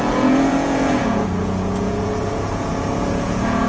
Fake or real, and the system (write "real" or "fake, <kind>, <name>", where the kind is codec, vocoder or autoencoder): fake, vocoder, Vocos